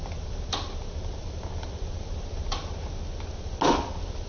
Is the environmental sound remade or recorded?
recorded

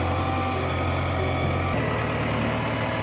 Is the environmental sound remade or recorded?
recorded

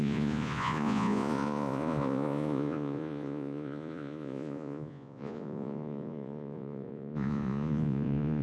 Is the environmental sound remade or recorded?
remade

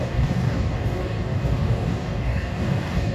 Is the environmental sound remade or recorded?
remade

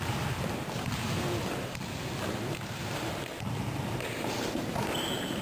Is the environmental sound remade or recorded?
recorded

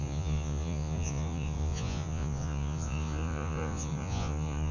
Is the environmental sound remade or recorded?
remade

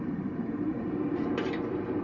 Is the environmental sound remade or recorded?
remade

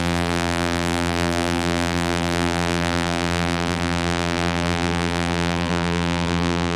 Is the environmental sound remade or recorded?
remade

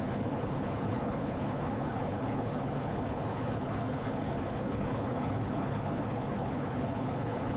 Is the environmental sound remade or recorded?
remade